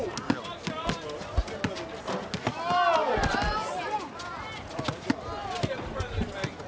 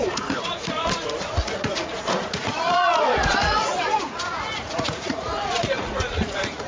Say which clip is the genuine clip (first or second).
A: first